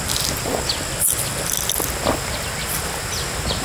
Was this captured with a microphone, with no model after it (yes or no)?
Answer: yes